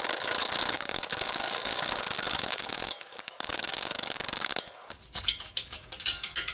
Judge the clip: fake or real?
fake